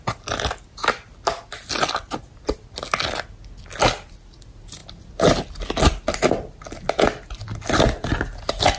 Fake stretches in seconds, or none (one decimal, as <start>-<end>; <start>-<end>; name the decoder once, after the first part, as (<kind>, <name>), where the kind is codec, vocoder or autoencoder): none